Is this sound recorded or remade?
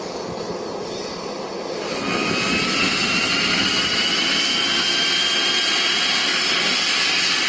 recorded